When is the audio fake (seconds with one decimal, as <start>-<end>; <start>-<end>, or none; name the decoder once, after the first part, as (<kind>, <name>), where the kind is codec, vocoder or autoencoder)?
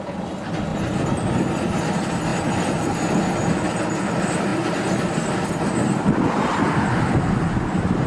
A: none